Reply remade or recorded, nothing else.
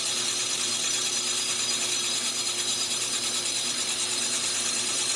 remade